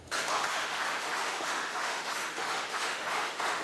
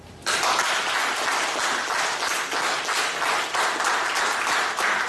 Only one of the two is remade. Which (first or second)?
first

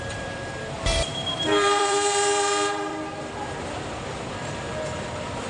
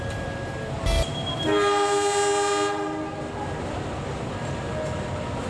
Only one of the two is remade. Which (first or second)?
first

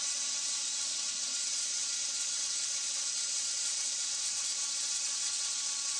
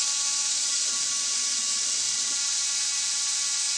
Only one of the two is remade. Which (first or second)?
first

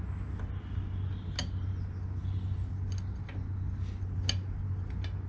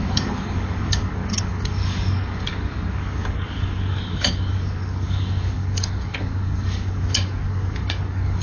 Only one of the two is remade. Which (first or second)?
second